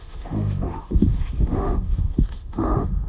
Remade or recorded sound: remade